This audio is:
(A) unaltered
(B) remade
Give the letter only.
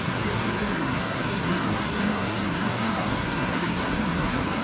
B